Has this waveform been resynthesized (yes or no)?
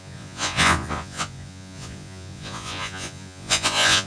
yes